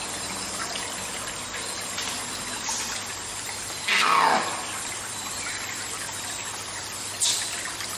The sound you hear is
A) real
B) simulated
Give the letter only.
A